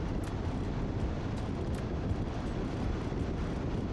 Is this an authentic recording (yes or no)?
yes